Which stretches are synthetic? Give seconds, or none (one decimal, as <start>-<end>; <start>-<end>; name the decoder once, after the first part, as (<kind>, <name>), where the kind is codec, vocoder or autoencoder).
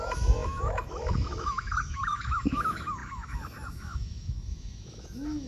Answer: 0.0-5.5 (autoencoder, DAC-VAE)